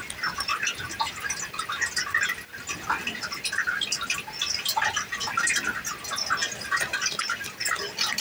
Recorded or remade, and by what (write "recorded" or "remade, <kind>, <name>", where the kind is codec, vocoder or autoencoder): recorded